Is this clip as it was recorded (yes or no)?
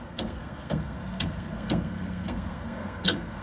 no